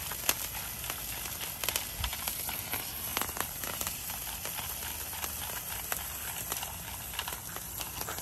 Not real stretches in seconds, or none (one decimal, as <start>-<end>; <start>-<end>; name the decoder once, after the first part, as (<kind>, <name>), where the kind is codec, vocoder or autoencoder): 3.1-4.0 (vocoder, BigVGAN v2)